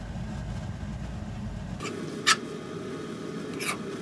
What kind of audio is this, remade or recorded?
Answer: recorded